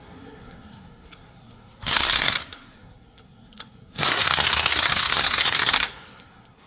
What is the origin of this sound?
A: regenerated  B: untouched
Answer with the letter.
A